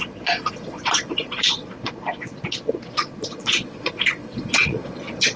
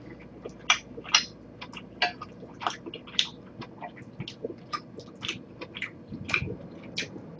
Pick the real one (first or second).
second